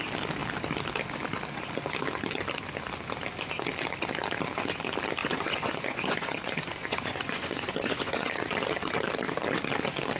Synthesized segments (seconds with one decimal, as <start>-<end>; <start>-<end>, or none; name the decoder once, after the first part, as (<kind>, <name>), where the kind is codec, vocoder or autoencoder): 5.2-8.3 (vocoder, Vocos)